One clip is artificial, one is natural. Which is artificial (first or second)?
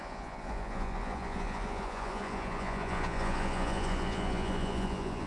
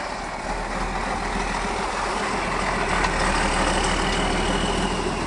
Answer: first